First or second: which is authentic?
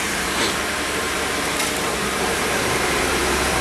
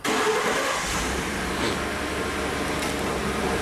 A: second